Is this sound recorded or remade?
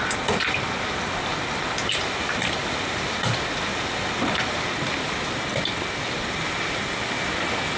remade